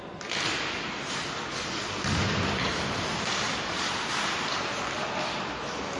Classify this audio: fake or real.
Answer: real